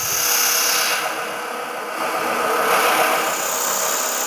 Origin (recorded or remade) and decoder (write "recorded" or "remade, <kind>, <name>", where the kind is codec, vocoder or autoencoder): recorded